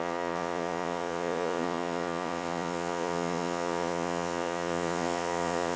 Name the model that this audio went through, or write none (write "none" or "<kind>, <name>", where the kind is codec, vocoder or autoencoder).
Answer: vocoder, Vocos